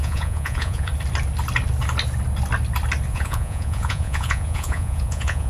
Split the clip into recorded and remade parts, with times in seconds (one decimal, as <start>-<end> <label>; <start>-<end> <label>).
0.0-0.9 remade; 0.9-3.1 recorded; 3.1-5.5 remade